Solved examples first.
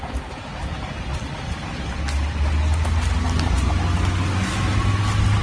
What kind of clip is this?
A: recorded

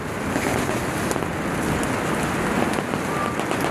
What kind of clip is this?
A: recorded